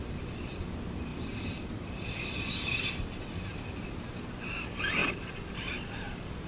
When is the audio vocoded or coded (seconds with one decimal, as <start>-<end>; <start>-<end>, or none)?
1.1-3.9; 5.0-5.7